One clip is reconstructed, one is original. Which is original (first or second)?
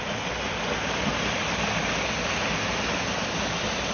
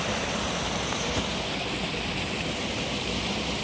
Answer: first